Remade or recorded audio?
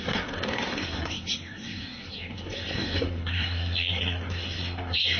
remade